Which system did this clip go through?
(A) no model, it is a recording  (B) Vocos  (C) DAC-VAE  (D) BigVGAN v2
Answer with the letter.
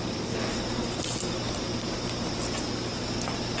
A